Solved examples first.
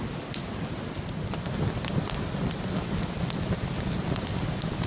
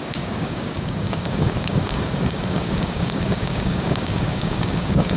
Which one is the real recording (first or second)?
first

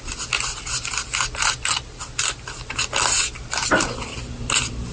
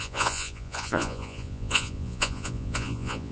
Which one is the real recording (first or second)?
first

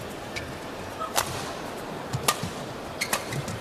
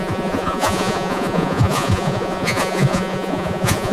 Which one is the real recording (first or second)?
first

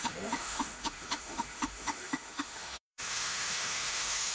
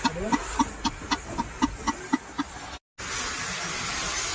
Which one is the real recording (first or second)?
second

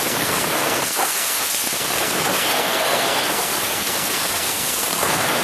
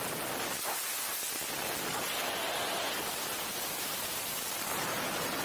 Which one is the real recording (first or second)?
second